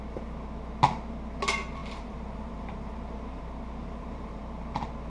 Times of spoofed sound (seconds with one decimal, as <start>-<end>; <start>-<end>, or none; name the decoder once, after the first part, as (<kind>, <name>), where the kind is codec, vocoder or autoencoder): 1.8-3.4 (vocoder, BigVGAN v2); 3.8-4.4